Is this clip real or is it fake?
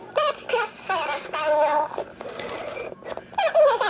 real